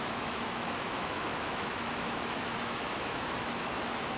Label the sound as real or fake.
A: fake